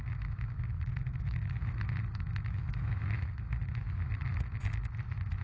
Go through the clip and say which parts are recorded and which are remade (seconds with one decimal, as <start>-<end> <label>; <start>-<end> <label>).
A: 0.0-4.6 remade; 4.6-5.4 recorded